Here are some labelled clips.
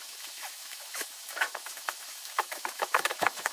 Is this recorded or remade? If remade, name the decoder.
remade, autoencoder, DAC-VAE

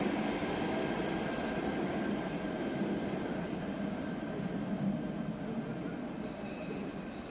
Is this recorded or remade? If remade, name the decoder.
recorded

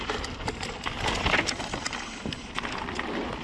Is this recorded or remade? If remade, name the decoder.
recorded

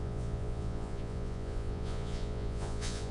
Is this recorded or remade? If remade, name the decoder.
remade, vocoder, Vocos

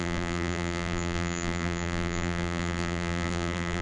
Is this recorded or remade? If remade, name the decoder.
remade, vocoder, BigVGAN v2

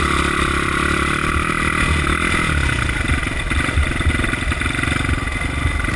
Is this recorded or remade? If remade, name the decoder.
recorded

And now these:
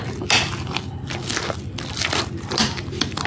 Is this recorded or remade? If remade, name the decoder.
recorded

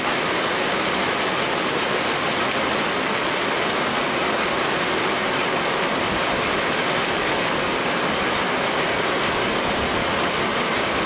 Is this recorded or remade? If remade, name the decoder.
recorded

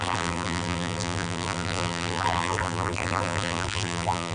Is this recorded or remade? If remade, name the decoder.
remade, vocoder, BigVGAN v2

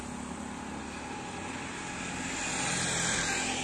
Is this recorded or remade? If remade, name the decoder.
recorded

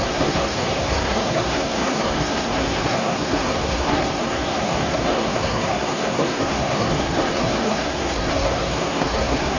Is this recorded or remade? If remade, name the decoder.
remade, codec, SNAC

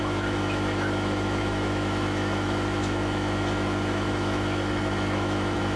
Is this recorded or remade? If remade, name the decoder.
remade, autoencoder, DAC-VAE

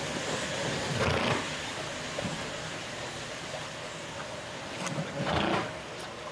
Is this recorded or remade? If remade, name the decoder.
recorded